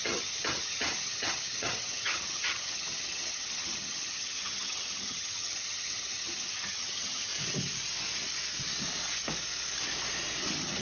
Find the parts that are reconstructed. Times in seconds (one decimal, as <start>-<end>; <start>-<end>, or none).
0.0-7.3; 10.4-10.8